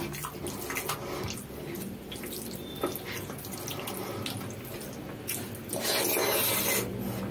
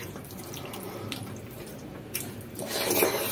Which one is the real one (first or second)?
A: first